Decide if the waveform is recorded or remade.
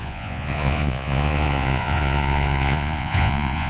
remade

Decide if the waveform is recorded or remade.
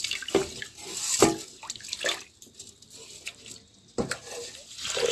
recorded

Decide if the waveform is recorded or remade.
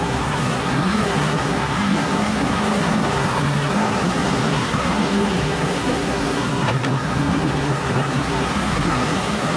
remade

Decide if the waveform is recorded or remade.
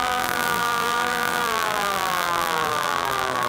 remade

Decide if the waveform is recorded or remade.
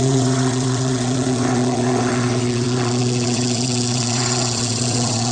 remade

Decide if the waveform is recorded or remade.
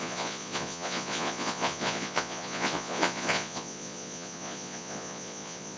remade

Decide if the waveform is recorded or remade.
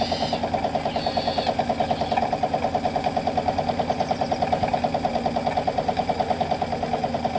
recorded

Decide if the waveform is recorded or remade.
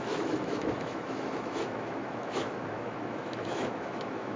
remade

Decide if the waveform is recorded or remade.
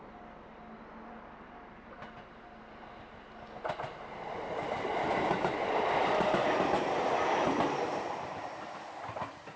recorded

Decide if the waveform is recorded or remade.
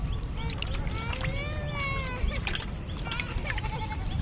recorded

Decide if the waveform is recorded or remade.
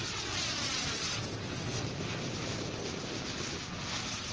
recorded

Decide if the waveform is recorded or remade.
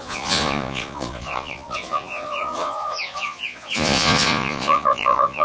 remade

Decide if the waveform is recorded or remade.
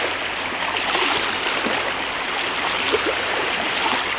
recorded